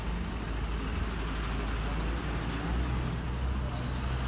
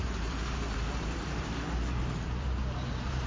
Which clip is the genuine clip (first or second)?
first